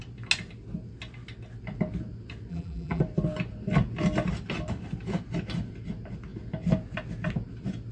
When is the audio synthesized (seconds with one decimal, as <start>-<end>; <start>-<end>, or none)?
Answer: 2.5-3.0